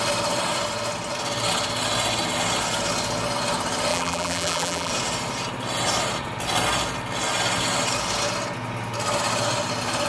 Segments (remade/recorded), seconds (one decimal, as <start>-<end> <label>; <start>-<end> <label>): 0.0-3.9 recorded; 3.9-4.9 remade; 4.9-10.1 recorded